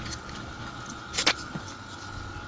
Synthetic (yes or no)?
no